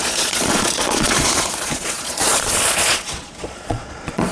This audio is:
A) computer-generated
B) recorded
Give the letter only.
A